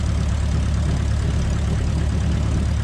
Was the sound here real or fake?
real